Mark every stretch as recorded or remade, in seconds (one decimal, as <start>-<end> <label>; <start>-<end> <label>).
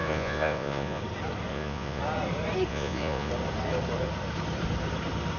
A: 0.0-1.0 remade; 1.0-1.5 recorded; 1.5-2.0 remade; 2.0-2.7 recorded; 2.7-3.3 remade; 3.3-5.4 recorded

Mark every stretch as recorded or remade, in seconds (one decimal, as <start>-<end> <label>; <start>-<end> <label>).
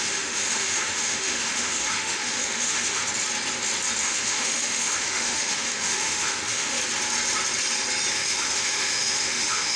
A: 0.0-3.0 remade; 3.0-4.0 recorded; 4.0-6.8 remade; 6.8-8.1 recorded; 8.1-9.8 remade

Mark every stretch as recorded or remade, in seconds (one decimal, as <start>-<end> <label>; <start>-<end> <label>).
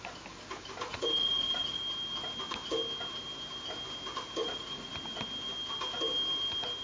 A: 0.0-0.9 recorded; 0.9-1.8 remade; 1.8-4.4 recorded; 4.4-4.9 remade; 4.9-6.8 recorded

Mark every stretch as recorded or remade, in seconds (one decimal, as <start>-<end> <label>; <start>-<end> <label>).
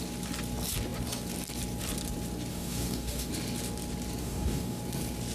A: 0.0-2.5 recorded; 2.5-3.3 remade; 3.3-4.2 recorded; 4.2-4.8 remade; 4.8-5.3 recorded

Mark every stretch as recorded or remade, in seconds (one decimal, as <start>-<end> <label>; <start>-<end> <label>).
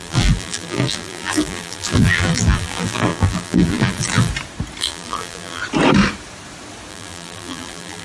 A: 0.0-4.3 remade; 4.3-4.8 recorded; 4.8-5.6 remade; 5.6-6.9 recorded; 6.9-8.0 remade